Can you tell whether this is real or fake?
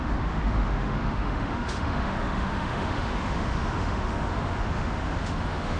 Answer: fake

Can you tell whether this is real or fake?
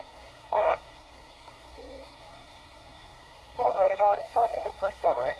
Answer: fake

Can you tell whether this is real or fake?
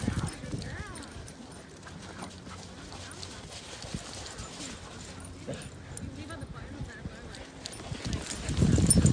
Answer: real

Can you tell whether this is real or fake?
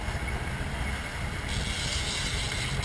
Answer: real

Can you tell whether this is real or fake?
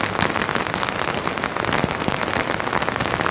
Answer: real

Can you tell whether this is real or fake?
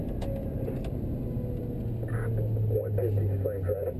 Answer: real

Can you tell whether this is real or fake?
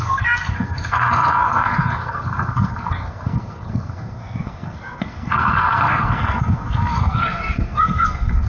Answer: fake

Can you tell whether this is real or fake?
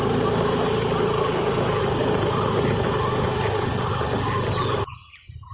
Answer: real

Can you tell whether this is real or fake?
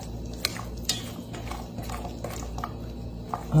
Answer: real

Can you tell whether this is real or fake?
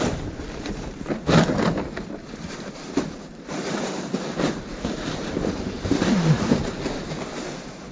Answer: fake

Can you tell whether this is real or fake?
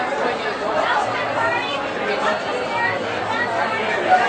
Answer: real